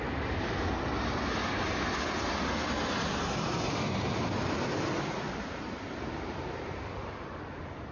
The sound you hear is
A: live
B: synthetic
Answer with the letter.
A